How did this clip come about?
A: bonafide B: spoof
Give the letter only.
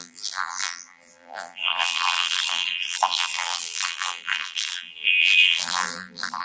B